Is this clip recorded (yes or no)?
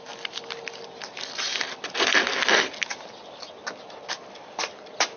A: yes